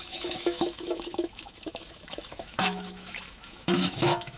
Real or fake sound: fake